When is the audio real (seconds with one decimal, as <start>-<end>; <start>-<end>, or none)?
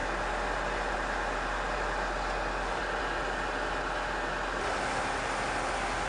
0.0-6.1